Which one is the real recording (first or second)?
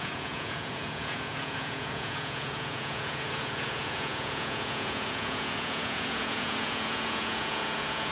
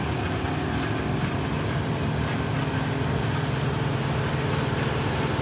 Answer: second